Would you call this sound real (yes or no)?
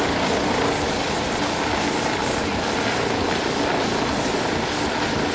yes